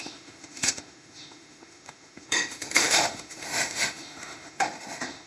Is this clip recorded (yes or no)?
no